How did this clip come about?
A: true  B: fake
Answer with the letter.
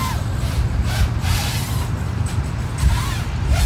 A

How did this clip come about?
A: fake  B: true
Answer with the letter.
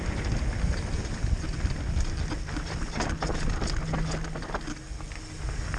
B